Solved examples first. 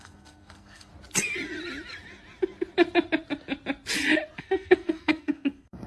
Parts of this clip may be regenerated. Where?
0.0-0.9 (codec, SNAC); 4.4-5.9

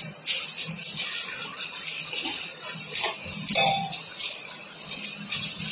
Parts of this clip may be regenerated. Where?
none

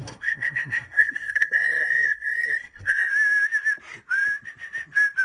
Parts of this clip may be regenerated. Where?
0.0-3.1 (codec, SNAC)

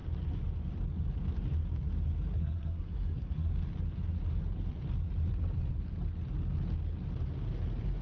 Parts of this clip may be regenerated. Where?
2.3-3.5 (codec, SNAC)

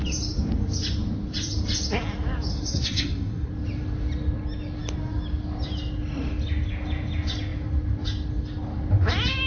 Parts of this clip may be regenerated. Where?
2.5-3.5 (codec, SNAC)

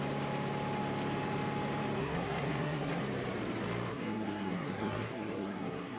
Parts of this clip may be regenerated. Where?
2.0-3.0 (codec, SNAC); 3.9-6.0

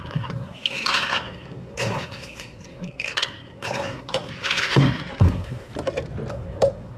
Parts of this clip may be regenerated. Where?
0.0-5.7 (codec, SNAC); 6.3-7.0

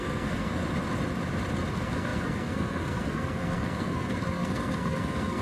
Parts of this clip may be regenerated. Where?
0.0-0.6 (codec, SNAC); 1.7-5.4